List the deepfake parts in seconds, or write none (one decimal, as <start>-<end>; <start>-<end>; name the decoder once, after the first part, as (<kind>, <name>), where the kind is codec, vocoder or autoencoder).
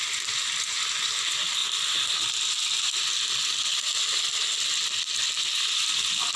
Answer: none